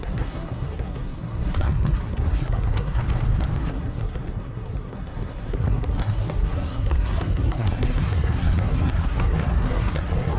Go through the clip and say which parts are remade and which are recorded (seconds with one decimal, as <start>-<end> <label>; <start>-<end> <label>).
0.0-3.0 remade; 3.0-3.6 recorded; 3.6-10.4 remade